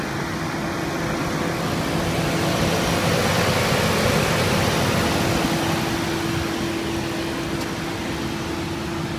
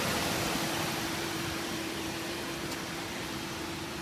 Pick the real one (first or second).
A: first